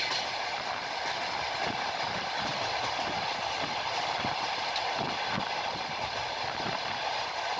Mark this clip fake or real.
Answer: real